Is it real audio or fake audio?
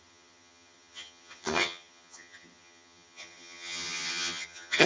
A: fake